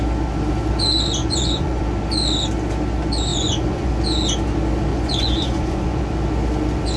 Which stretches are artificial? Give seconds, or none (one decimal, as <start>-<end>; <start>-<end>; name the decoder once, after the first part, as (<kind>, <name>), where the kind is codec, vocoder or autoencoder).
1.2-1.8 (vocoder, Vocos); 3.3-3.9; 4.9-6.0